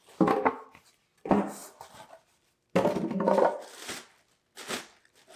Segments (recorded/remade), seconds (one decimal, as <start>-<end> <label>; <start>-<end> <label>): 0.0-5.4 recorded